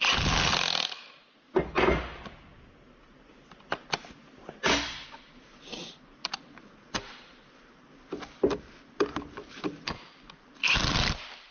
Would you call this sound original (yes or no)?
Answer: yes